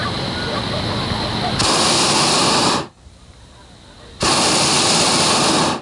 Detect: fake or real real